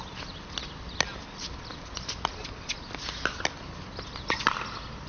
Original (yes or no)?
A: yes